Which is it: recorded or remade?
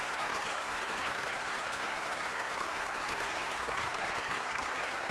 remade